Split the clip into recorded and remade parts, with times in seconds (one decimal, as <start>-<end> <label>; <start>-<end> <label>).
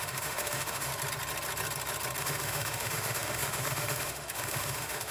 0.0-0.9 remade; 0.9-2.2 recorded; 2.2-5.1 remade